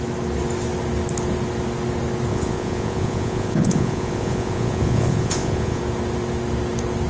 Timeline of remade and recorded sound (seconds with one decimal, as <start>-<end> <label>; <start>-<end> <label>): 0.0-2.3 recorded; 2.3-5.8 remade; 5.8-7.1 recorded